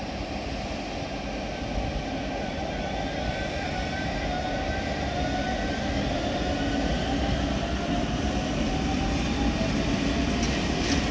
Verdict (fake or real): real